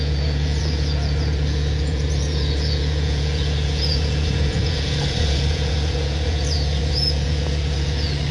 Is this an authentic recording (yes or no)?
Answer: no